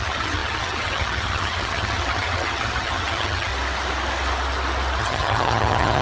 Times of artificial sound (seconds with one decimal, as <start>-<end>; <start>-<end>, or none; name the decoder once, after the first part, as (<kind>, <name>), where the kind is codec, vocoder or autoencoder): 0.0-3.5 (vocoder, HiFi-GAN); 5.0-6.0

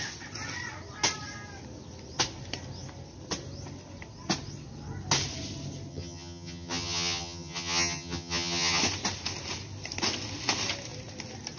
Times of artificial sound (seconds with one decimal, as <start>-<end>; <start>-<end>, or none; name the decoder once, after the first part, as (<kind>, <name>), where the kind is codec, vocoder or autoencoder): 5.9-8.8 (vocoder, HiFi-GAN)

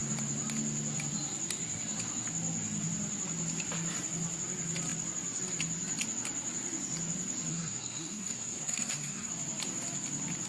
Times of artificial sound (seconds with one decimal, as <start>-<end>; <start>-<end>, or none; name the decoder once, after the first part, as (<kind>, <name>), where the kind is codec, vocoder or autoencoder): 7.5-9.3 (codec, SNAC)